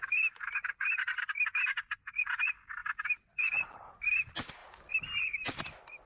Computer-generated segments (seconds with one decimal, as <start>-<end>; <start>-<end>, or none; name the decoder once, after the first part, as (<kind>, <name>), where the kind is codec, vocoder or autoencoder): none